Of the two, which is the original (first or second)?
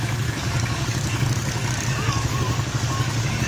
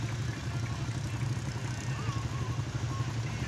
second